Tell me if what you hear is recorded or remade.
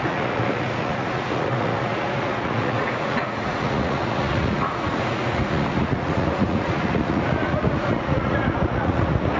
remade